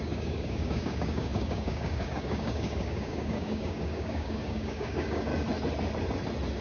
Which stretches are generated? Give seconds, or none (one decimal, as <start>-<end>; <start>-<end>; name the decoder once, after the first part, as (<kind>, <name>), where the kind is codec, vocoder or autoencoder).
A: 0.0-5.3 (codec, DAC)